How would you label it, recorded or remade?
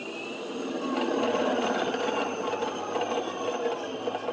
recorded